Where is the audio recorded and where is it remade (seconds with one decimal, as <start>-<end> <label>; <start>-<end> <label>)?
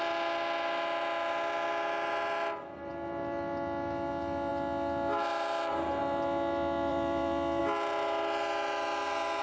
0.0-6.9 recorded; 6.9-7.6 remade; 7.6-9.4 recorded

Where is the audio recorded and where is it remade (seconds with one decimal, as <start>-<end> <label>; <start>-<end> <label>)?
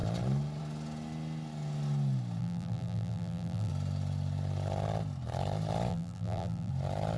0.0-2.4 recorded; 2.4-3.7 remade; 3.7-5.9 recorded; 5.9-6.7 remade; 6.7-7.2 recorded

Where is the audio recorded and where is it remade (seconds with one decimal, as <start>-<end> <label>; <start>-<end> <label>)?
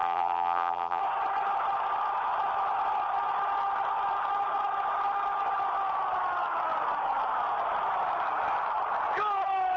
0.0-1.0 remade; 1.0-9.8 recorded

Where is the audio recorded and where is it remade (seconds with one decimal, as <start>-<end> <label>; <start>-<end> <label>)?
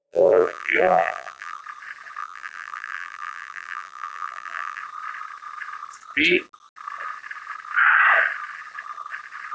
0.0-1.6 remade; 1.6-2.2 recorded; 2.2-4.8 remade; 4.8-9.5 recorded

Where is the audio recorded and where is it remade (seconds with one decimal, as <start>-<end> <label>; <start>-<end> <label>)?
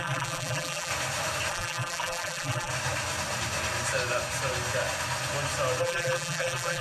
0.0-0.9 remade; 0.9-1.5 recorded; 1.5-2.7 remade; 2.7-5.8 recorded; 5.8-6.8 remade